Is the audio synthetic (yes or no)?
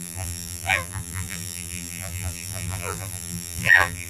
yes